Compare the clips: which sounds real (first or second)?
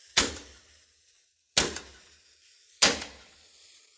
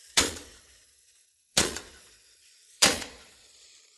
first